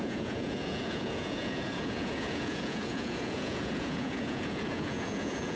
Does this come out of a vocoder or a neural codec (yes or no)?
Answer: yes